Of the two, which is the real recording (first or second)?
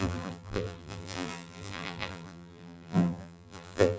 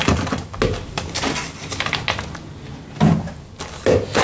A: second